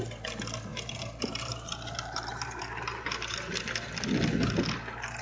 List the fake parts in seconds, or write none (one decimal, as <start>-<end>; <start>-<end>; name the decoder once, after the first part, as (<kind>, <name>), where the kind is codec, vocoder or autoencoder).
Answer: 0.7-3.7 (vocoder, BigVGAN v2)